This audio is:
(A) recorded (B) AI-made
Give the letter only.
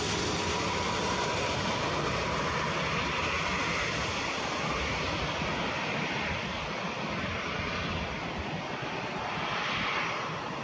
A